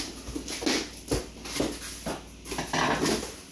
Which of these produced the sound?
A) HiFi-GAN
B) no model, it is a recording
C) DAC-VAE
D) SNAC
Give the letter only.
B